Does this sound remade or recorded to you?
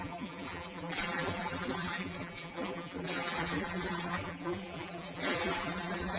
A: remade